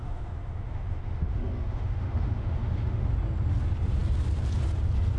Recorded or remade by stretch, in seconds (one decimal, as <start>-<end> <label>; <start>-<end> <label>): 0.0-3.1 remade; 3.1-5.2 recorded